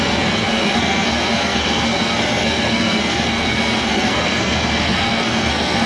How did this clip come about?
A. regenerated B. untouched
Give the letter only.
A